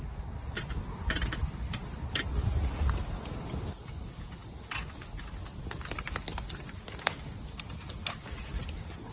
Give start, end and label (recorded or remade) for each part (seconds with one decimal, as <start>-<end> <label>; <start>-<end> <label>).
0.0-2.3 recorded; 2.3-3.0 remade; 3.0-9.1 recorded